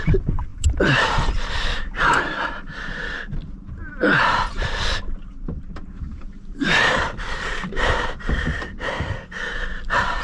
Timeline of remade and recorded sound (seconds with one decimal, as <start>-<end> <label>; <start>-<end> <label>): 0.0-10.2 remade